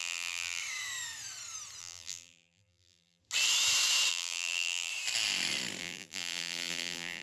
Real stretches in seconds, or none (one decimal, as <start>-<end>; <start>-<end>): 0.6-1.8; 3.2-4.1; 4.9-5.8